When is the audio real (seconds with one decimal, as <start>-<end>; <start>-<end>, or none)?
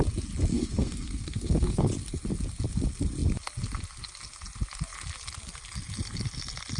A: 0.0-0.5; 1.9-6.8